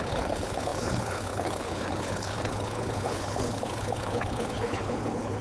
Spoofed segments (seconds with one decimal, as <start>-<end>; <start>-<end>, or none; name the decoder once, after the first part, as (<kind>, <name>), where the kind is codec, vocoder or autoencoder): 0.0-5.4 (codec, HILCodec)